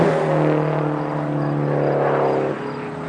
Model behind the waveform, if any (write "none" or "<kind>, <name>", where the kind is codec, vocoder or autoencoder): none